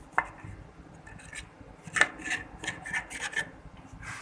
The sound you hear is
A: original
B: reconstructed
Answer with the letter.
A